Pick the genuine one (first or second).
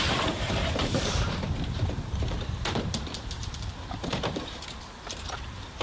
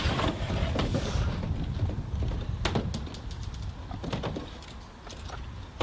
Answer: second